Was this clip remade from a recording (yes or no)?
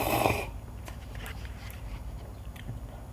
yes